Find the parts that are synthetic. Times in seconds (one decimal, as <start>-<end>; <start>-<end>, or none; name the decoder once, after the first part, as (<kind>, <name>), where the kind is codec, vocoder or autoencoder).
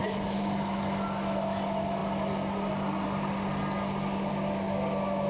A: 0.0-0.8 (autoencoder, DAC-VAE)